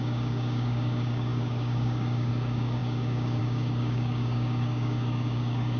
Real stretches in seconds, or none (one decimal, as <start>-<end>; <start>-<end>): none